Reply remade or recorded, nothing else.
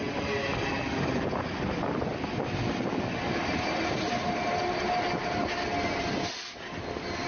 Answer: recorded